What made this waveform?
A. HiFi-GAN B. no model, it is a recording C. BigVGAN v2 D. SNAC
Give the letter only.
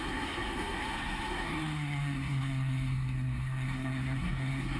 D